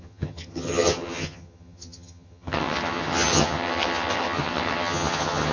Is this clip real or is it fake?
fake